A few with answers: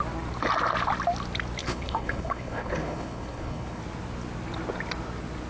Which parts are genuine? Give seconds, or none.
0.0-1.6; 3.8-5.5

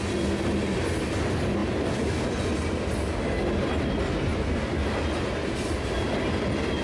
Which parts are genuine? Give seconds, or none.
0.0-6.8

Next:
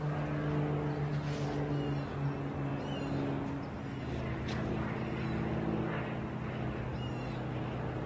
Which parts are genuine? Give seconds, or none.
0.0-8.1